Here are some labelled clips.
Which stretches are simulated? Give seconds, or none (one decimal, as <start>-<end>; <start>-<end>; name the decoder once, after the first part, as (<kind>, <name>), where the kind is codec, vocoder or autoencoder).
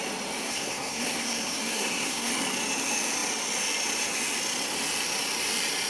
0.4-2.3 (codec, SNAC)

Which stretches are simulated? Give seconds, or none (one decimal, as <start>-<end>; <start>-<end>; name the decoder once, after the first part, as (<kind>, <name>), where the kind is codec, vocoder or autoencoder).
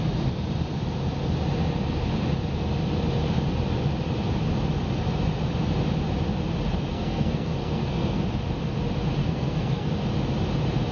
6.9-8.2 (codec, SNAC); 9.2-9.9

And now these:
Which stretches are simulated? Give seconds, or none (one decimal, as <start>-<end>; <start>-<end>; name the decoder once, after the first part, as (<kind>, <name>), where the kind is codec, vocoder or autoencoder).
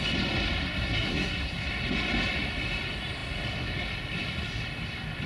0.6-1.7 (codec, SNAC)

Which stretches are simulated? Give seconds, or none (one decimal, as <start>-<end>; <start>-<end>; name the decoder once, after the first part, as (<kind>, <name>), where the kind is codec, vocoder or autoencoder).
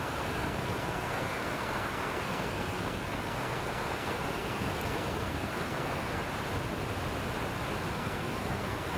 0.0-6.2 (codec, SNAC); 7.9-9.0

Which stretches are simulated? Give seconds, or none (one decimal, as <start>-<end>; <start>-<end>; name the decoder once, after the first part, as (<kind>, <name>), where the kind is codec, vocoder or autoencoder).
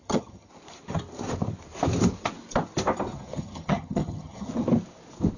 0.0-0.5 (vocoder, HiFi-GAN); 3.1-4.5